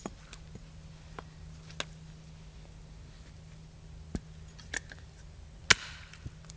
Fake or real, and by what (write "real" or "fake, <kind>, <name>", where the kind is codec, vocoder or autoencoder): real